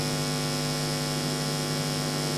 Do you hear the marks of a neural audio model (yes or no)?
no